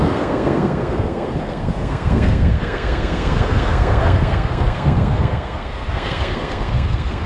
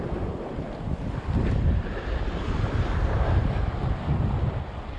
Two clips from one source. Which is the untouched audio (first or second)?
second